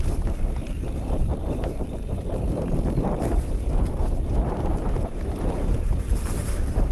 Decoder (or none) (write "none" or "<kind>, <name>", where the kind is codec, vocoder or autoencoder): vocoder, BigVGAN v2